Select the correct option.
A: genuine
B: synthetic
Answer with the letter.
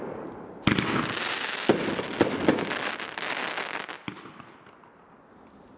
A